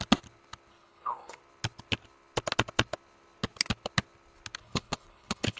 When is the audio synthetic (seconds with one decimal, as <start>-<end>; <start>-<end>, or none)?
0.7-1.4; 4.6-5.6